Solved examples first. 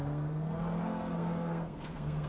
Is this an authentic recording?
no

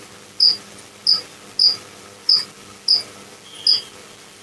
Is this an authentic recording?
yes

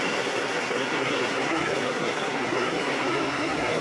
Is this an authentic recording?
no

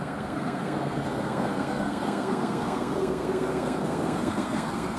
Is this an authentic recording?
no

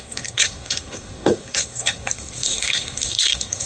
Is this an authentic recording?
no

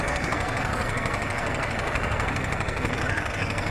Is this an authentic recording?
no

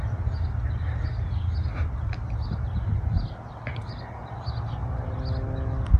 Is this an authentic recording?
yes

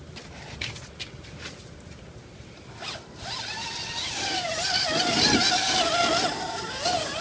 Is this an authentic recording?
yes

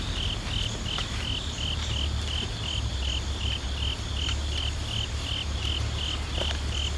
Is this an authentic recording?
yes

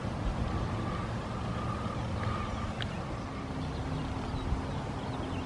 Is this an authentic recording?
yes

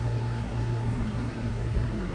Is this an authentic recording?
no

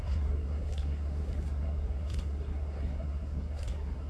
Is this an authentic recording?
no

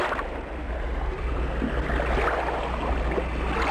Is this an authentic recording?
yes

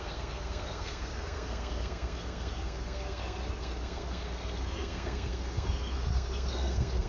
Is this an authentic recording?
no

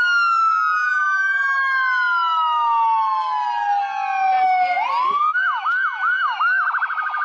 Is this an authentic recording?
yes